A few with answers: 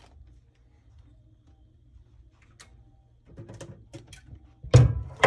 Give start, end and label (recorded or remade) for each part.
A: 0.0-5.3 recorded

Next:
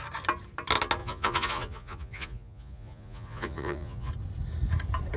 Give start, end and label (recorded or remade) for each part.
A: 0.0-1.0 recorded; 1.0-4.1 remade; 4.1-5.2 recorded

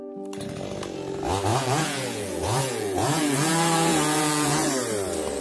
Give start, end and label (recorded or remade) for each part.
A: 0.0-1.5 recorded; 1.5-4.7 remade; 4.7-5.4 recorded

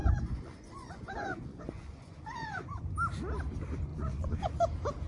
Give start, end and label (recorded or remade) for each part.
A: 0.0-2.8 remade; 2.8-3.9 recorded; 3.9-4.6 remade; 4.6-5.1 recorded

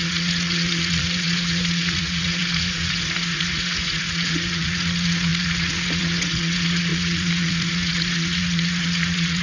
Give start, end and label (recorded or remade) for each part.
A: 0.0-9.4 remade

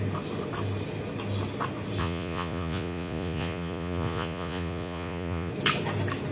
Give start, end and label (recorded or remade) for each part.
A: 0.0-2.0 recorded; 2.0-5.5 remade; 5.5-6.3 recorded